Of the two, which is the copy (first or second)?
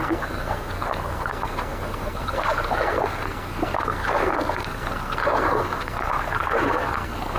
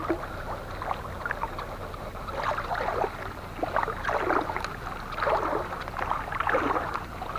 first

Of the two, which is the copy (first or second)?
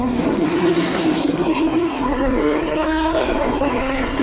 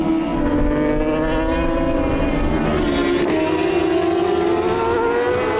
first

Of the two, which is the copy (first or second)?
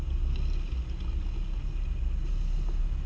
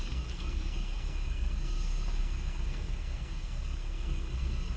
second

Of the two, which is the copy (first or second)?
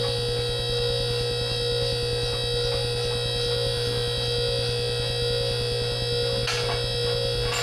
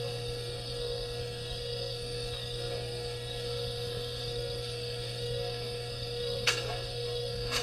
second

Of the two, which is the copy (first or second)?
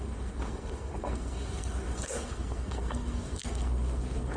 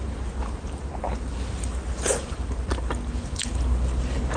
first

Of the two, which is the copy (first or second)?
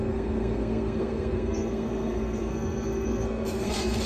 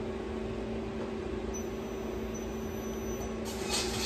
first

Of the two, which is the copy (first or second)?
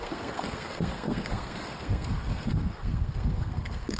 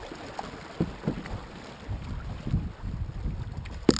first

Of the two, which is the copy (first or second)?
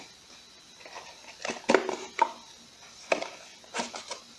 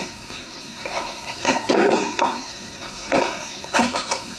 second